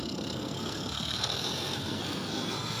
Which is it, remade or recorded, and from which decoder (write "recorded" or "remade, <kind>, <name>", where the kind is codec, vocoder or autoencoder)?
remade, codec, SNAC